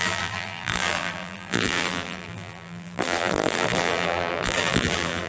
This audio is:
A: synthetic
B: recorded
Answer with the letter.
A